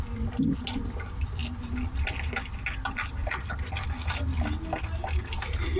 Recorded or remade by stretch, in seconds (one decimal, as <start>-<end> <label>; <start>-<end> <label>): 0.0-5.8 recorded